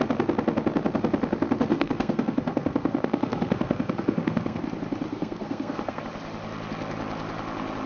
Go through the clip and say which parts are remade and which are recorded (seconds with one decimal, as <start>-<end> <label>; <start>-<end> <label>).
0.0-1.7 recorded; 1.7-4.6 remade; 4.6-5.1 recorded; 5.1-6.0 remade; 6.0-7.9 recorded